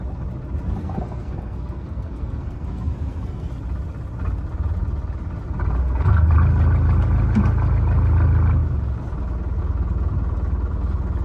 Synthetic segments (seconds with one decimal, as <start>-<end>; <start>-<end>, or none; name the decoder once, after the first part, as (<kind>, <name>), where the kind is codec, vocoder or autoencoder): 0.8-3.5 (codec, SNAC); 5.8-6.3